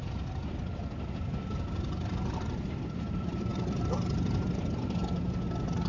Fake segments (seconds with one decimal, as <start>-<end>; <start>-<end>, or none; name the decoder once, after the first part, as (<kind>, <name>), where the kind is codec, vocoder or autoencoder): 1.7-5.0 (vocoder, BigVGAN v2)

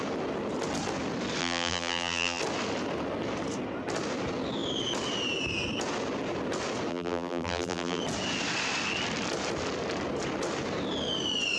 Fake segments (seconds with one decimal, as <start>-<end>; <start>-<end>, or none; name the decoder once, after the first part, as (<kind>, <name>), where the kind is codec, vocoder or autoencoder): 1.4-2.4 (vocoder, BigVGAN v2); 6.9-8.0

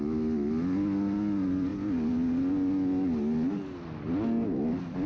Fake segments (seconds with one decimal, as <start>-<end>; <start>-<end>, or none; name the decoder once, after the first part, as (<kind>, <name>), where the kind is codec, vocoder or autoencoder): none